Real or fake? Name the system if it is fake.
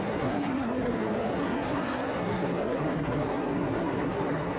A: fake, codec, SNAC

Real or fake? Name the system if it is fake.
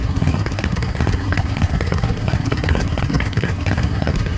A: fake, codec, SNAC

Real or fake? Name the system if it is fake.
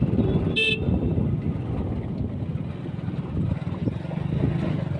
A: real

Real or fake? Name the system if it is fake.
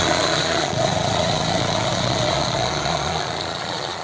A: fake, vocoder, Vocos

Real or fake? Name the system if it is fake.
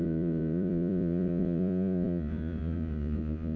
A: fake, vocoder, Vocos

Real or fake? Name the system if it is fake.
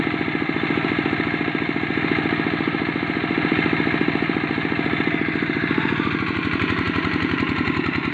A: fake, vocoder, BigVGAN v2